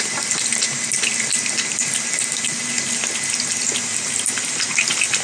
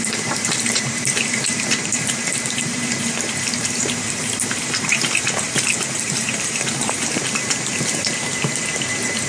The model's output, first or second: second